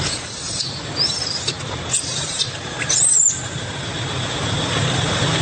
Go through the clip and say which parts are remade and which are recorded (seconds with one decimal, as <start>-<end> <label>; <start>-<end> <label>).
0.0-2.1 recorded; 2.1-3.7 remade; 3.7-5.4 recorded